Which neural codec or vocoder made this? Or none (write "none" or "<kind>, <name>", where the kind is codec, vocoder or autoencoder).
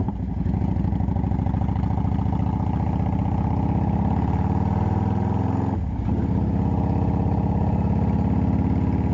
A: none